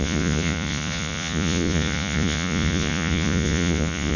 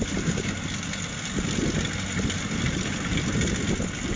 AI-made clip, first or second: first